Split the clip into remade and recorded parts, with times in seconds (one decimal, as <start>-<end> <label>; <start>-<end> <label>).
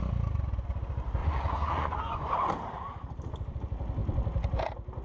0.0-1.2 recorded; 1.2-2.3 remade; 2.3-5.0 recorded